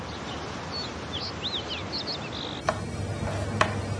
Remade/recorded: recorded